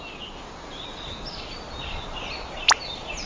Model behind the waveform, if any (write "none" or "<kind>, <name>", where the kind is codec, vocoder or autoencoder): none